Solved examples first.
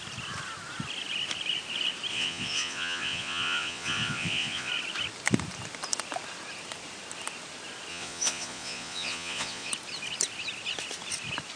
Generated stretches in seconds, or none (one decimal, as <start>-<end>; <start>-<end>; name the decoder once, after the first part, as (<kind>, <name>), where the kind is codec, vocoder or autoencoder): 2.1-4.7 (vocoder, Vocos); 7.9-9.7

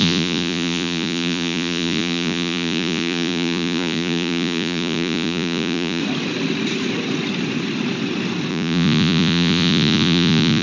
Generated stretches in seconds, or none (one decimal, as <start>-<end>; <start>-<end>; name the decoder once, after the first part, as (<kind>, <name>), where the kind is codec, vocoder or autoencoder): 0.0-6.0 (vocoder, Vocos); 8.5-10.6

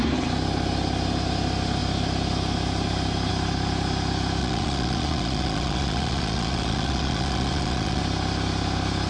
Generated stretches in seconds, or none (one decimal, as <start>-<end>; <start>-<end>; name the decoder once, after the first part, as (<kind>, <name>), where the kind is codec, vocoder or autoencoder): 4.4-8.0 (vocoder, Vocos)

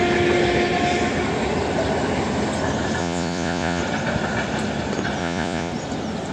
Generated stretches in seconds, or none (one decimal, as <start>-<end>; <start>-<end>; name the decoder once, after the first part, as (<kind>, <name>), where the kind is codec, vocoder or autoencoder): 3.0-3.8 (vocoder, Vocos); 5.2-5.7

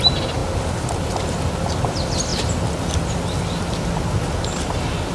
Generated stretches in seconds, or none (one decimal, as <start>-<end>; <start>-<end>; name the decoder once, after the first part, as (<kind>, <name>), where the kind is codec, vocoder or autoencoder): none

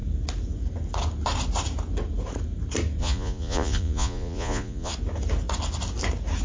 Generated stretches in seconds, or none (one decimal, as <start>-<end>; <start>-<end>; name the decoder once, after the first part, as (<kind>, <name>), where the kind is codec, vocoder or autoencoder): 3.0-4.9 (vocoder, Vocos)

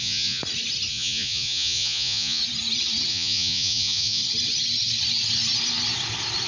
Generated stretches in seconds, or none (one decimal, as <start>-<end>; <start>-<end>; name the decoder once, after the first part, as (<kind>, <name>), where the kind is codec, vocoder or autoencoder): 0.0-0.4 (vocoder, Vocos); 0.9-2.4; 3.1-4.2